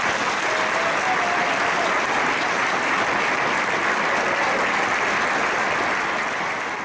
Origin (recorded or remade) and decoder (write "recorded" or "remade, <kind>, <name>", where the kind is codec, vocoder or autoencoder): recorded